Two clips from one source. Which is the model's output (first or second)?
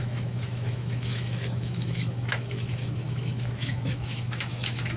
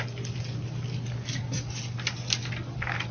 first